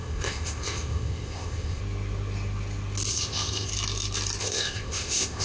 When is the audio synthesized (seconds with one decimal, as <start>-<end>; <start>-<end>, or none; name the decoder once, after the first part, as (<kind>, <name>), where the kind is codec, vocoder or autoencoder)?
0.0-1.8 (codec, ZipCodec); 3.1-3.7; 4.4-5.4